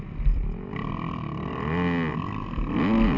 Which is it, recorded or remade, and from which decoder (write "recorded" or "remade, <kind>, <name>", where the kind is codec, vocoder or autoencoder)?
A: recorded